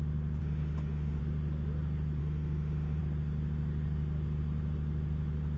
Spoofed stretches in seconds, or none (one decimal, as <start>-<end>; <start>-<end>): 0.4-1.2; 2.2-3.0